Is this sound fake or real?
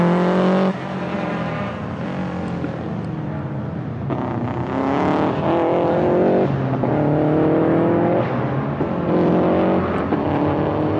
real